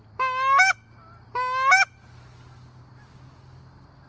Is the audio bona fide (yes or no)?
yes